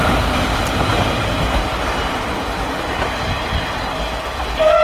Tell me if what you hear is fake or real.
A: real